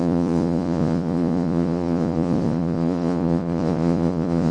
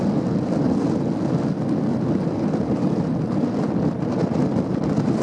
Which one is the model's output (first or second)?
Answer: first